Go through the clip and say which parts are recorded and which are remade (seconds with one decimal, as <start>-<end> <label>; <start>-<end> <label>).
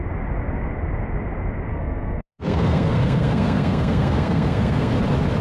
0.0-1.7 recorded; 1.7-4.9 remade; 4.9-5.4 recorded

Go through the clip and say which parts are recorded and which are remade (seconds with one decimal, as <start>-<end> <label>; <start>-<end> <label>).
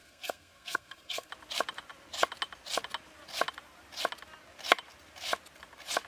0.0-1.3 remade; 1.3-6.1 recorded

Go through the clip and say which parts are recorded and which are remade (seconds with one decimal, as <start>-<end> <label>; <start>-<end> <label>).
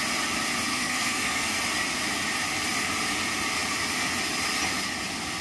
0.0-0.7 recorded; 0.7-1.6 remade; 1.6-5.4 recorded